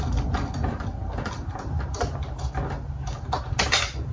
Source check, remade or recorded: recorded